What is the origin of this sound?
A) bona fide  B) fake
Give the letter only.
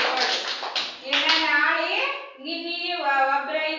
A